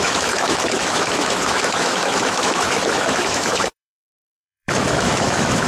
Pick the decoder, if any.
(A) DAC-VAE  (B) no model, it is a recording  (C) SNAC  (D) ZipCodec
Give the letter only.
A